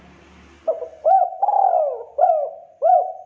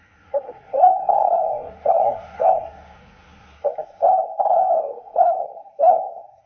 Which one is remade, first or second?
second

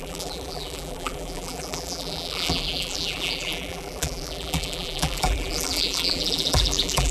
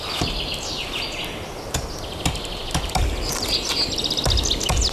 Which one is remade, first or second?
first